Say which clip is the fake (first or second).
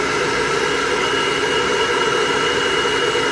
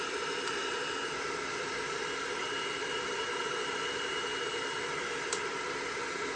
second